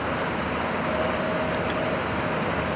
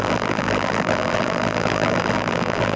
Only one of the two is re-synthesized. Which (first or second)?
second